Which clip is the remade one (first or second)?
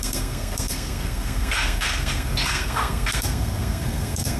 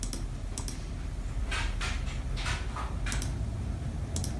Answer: first